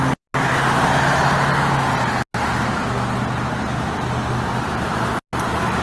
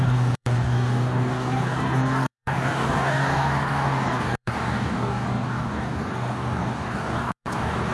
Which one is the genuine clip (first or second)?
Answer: first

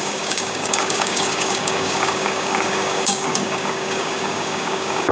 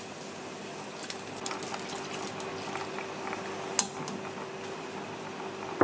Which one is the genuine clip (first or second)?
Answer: second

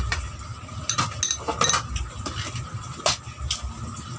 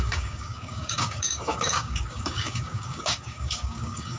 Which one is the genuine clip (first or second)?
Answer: first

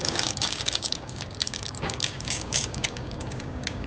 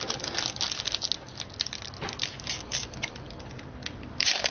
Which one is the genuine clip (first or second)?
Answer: second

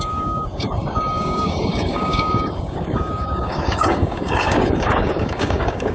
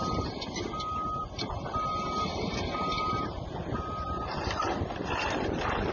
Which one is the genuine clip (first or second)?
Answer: second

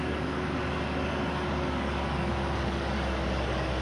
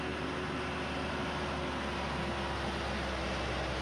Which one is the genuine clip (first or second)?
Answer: second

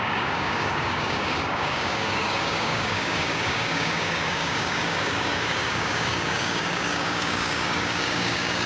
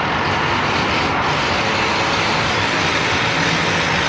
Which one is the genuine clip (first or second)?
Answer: second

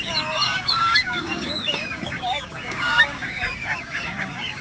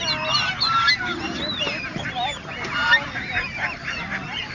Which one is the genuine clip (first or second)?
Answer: second